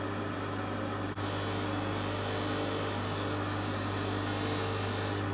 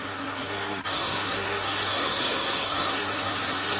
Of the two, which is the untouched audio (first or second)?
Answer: first